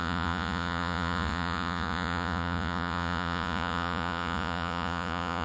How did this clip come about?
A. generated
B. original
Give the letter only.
A